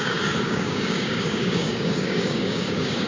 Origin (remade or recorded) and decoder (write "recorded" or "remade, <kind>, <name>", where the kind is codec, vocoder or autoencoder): remade, codec, DAC